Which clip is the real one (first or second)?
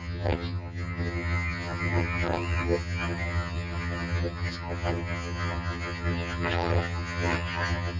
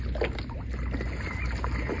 second